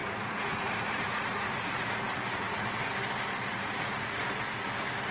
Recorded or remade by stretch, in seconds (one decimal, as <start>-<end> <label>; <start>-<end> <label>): 0.0-2.9 remade; 2.9-3.5 recorded; 3.5-4.2 remade; 4.2-5.1 recorded